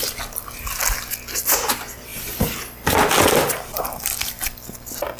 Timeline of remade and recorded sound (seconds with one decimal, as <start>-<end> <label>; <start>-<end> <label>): 0.0-5.2 recorded